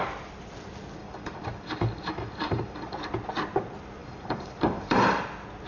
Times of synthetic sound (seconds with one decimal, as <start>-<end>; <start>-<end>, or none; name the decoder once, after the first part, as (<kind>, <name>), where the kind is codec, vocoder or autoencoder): 1.0-3.1 (vocoder, BigVGAN v2); 4.0-5.2